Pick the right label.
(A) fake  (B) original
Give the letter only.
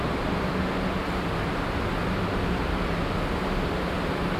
B